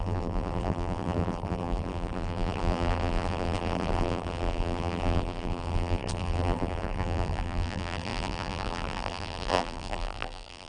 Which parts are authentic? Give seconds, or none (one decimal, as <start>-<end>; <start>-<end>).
none